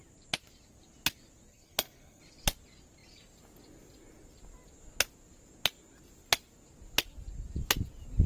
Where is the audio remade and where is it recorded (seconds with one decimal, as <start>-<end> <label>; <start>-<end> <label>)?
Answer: 0.0-1.5 recorded; 1.5-2.2 remade; 2.2-8.3 recorded